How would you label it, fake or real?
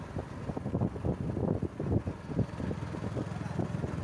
real